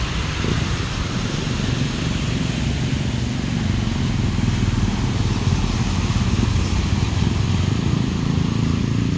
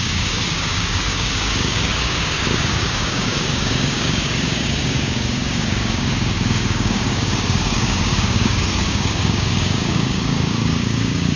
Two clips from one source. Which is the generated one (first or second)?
second